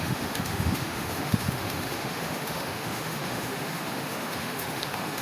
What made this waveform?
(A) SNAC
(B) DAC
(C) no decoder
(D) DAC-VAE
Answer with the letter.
D